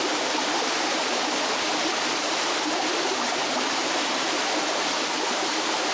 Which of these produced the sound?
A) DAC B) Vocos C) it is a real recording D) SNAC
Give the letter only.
C